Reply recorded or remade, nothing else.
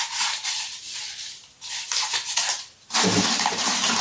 remade